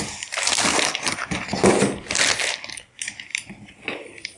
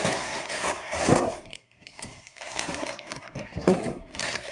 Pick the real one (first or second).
first